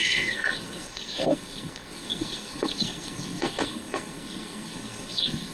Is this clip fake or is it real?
fake